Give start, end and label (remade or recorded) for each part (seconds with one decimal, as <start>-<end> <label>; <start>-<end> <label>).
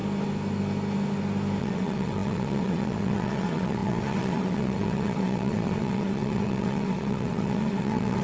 0.0-1.6 recorded; 1.6-8.2 remade